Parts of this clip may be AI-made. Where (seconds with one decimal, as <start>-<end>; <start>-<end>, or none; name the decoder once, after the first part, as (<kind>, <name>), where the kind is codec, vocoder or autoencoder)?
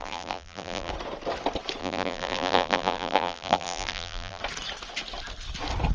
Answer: 0.0-0.9 (vocoder, BigVGAN v2); 1.8-4.4